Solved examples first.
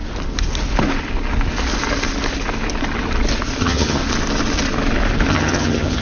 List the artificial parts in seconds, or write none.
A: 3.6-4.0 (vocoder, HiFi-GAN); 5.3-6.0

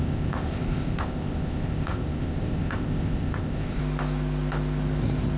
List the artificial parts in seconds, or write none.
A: 0.0-3.8 (codec, ZipCodec)

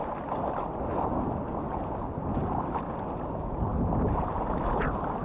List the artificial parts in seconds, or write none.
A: none

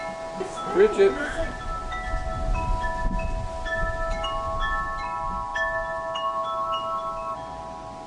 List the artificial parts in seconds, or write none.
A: none

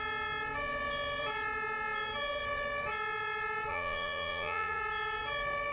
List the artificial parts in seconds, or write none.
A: 3.7-4.8 (vocoder, Vocos)

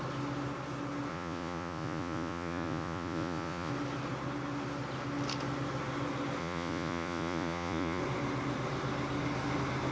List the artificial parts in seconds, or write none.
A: 1.1-3.7 (vocoder, Vocos); 6.4-8.0